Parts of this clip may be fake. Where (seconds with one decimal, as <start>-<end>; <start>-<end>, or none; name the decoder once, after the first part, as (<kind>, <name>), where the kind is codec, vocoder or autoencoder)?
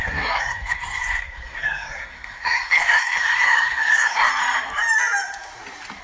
0.0-4.3 (codec, SNAC)